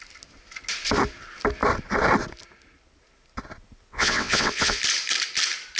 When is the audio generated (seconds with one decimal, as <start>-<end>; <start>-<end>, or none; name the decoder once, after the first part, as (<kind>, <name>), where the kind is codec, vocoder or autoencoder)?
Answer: 3.9-4.8 (vocoder, WaveNeXt)